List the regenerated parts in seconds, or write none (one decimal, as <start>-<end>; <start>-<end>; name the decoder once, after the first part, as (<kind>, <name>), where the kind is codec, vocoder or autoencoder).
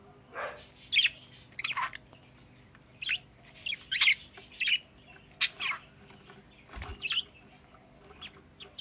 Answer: none